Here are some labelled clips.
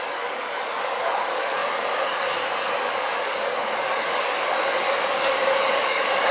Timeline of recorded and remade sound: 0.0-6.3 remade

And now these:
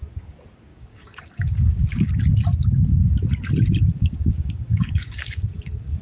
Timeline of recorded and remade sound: 0.0-0.7 recorded; 0.7-2.1 remade; 2.1-4.0 recorded; 4.0-6.0 remade

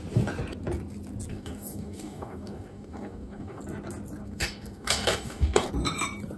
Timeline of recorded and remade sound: 0.0-1.3 recorded; 1.3-3.6 remade; 3.6-4.2 recorded; 4.2-5.7 remade; 5.7-6.4 recorded

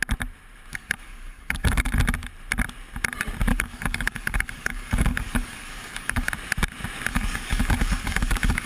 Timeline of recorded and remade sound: 0.0-0.7 recorded; 0.7-1.9 remade; 1.9-3.5 recorded; 3.5-6.3 remade; 6.3-7.1 recorded; 7.1-8.7 remade

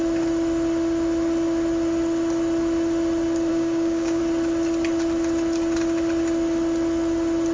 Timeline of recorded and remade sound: 0.0-3.5 recorded; 3.5-4.2 remade; 4.2-7.5 recorded

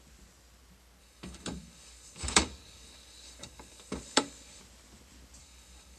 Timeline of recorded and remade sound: 0.0-1.0 recorded; 1.0-4.6 remade; 4.6-5.4 recorded; 5.4-6.0 remade

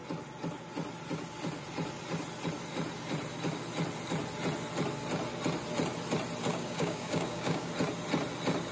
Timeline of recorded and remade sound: 0.0-6.5 recorded; 6.5-7.7 remade; 7.7-8.7 recorded

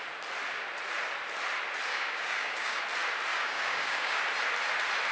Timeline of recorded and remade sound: 0.0-1.9 recorded; 1.9-2.8 remade; 2.8-3.3 recorded; 3.3-4.2 remade; 4.2-5.1 recorded